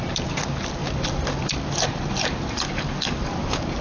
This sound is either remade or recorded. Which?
remade